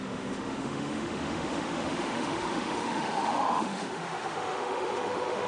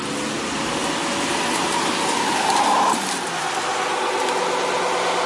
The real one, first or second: second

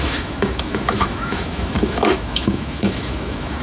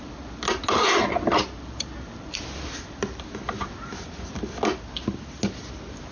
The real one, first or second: second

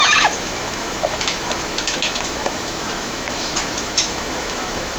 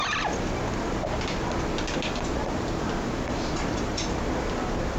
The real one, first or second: second